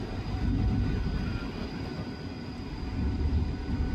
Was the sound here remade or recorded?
recorded